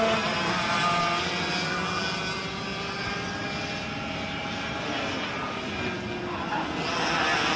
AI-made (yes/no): no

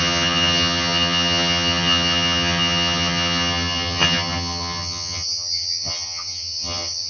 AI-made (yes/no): yes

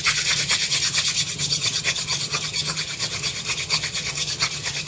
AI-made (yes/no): yes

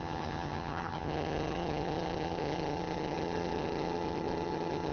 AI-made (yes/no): yes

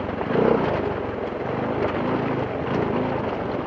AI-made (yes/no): no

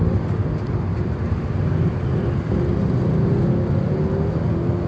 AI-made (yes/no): no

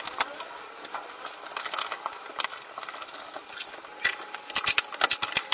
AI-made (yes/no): no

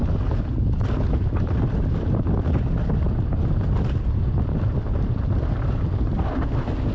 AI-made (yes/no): no